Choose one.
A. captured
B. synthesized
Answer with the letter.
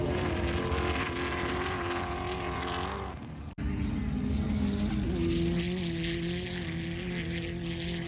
A